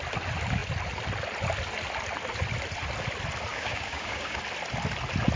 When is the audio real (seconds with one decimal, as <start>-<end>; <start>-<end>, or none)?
0.0-3.5; 4.4-5.4